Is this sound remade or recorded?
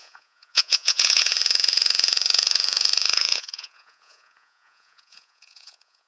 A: remade